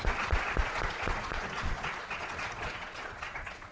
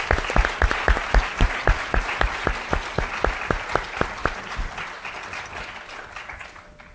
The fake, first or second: first